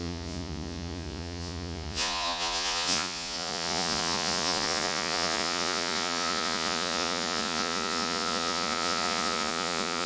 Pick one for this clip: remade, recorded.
remade